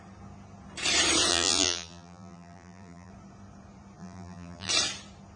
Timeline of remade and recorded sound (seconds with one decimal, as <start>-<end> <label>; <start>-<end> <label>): 0.0-1.3 recorded; 1.3-3.1 remade; 3.1-4.0 recorded; 4.0-4.7 remade; 4.7-5.4 recorded